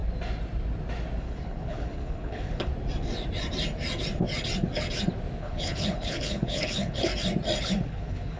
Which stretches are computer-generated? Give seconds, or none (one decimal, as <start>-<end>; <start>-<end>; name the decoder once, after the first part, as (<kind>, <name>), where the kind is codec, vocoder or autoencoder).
1.2-2.7 (codec, HILCodec); 5.4-7.1; 7.6-8.4